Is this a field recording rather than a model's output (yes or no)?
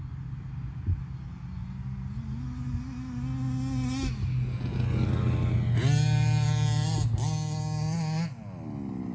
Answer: yes